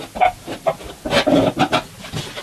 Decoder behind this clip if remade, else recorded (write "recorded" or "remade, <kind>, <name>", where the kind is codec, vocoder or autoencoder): recorded